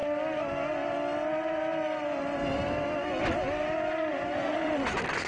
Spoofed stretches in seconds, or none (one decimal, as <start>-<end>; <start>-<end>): 4.1-4.7